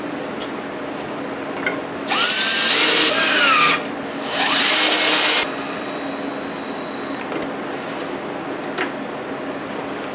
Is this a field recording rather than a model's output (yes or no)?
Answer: yes